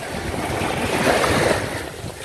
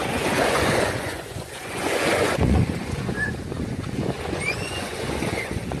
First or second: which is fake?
second